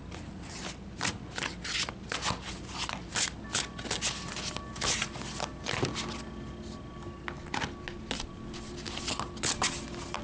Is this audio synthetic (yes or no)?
no